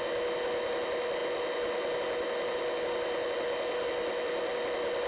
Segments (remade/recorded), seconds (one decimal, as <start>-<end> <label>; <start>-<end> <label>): 0.0-5.1 recorded